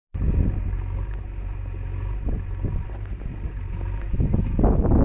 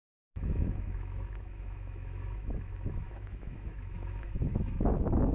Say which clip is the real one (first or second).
first